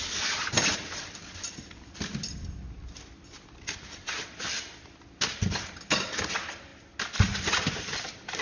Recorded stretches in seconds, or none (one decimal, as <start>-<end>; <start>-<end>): 0.0-8.4